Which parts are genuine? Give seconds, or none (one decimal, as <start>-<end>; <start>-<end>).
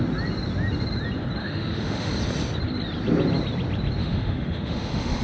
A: 0.0-1.4; 2.1-4.0